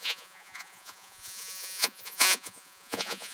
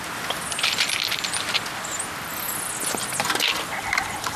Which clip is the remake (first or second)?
first